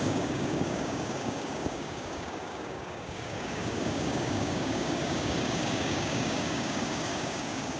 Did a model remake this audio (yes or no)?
yes